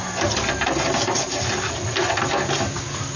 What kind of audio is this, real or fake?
real